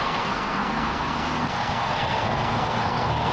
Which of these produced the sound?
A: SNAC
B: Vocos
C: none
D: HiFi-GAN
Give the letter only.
A